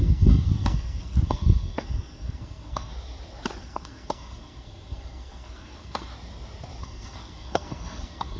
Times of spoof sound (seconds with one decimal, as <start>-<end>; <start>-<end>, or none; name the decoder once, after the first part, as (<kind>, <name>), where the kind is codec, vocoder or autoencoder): 0.0-2.9 (codec, SNAC); 3.6-6.1; 6.8-8.4